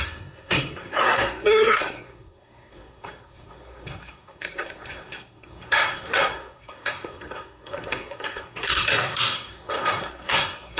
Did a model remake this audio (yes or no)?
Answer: yes